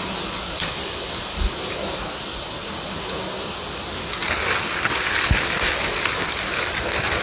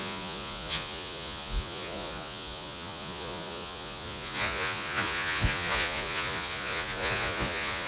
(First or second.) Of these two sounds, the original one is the first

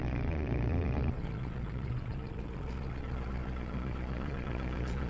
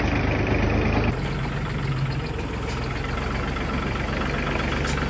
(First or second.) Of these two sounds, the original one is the second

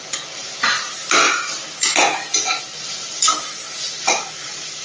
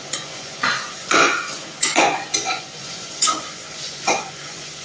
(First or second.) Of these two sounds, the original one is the first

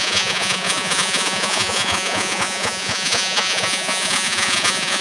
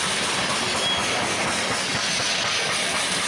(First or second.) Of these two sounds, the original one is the second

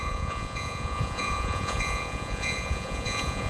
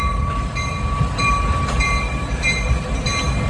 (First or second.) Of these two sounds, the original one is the second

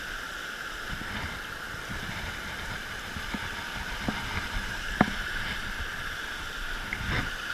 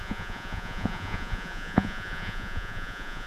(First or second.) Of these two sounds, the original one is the first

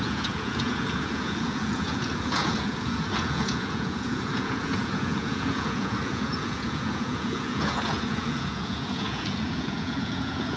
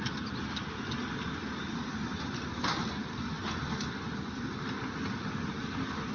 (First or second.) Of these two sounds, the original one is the second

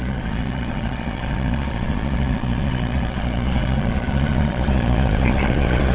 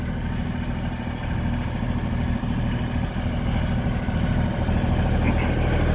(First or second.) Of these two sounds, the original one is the second